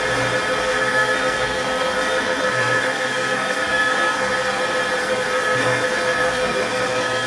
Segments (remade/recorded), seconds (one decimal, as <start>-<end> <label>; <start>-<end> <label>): 0.0-0.6 recorded; 0.6-4.6 remade; 4.6-5.0 recorded; 5.0-7.3 remade